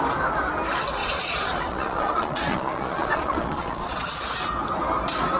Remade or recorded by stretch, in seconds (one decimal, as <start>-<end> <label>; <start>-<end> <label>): 0.0-1.0 recorded; 1.0-4.2 remade; 4.2-5.4 recorded